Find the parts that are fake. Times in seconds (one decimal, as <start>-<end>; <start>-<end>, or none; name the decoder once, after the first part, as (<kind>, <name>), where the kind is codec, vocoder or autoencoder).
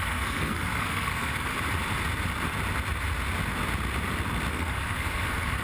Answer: 0.0-1.5 (codec, SNAC); 4.5-5.6